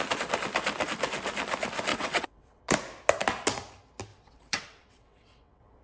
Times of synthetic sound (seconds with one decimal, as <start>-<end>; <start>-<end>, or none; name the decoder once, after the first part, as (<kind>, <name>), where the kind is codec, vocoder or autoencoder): 1.9-2.6 (vocoder, WaveNeXt); 4.1-5.8